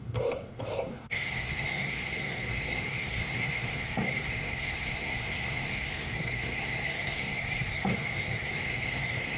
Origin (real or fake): fake